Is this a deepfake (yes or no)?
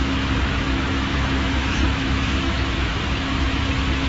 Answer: yes